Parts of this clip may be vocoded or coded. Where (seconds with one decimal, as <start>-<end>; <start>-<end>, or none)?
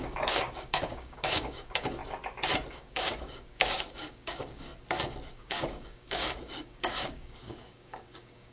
0.0-2.0; 2.7-4.7; 5.3-8.5